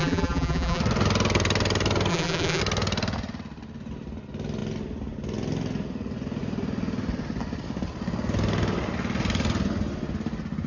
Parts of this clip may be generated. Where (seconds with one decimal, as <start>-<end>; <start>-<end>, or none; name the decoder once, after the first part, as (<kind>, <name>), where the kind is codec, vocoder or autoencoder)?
0.0-0.8 (vocoder, BigVGAN v2); 2.1-2.6